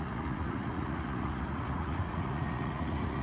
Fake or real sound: fake